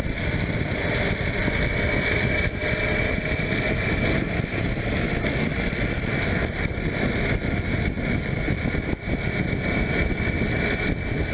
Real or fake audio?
real